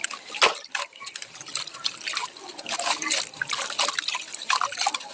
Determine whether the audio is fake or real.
real